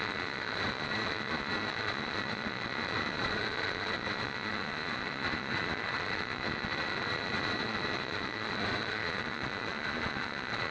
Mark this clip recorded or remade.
remade